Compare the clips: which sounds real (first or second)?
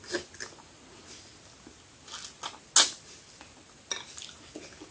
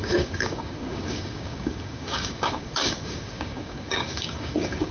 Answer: first